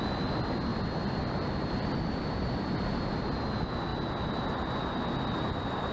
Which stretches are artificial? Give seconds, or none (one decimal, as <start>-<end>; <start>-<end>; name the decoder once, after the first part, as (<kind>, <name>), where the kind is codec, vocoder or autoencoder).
0.7-2.5 (vocoder, BigVGAN v2)